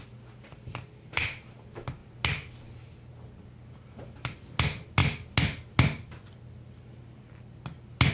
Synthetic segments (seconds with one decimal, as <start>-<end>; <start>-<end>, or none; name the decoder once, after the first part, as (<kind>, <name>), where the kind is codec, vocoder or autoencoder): none